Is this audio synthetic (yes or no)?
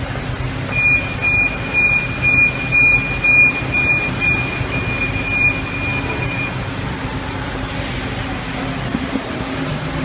no